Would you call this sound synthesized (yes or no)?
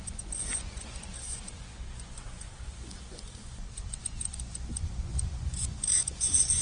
yes